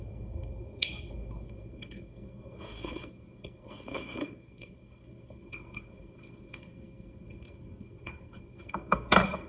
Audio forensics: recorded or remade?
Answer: remade